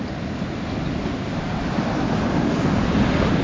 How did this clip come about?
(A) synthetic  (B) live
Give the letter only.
B